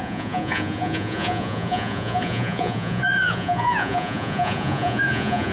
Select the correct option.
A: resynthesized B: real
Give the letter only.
A